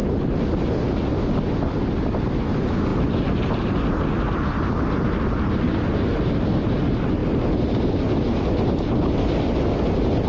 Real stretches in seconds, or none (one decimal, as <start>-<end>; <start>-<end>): 0.0-10.3